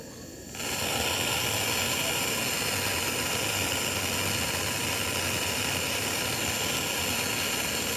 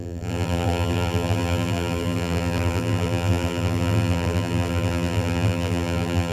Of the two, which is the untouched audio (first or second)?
first